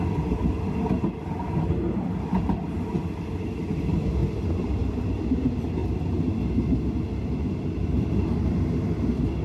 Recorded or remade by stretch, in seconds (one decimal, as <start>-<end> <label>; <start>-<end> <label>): 0.0-4.2 recorded; 4.2-5.3 remade; 5.3-9.4 recorded